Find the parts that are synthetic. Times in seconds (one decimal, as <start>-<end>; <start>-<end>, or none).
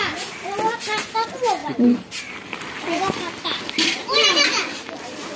1.6-2.2; 3.0-4.5